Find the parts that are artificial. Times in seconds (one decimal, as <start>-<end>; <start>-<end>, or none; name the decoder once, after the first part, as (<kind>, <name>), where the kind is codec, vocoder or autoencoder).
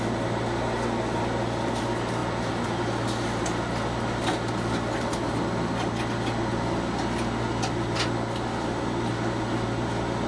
none